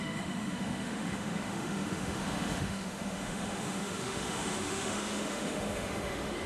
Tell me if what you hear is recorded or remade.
remade